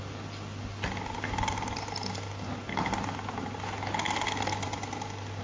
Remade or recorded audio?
recorded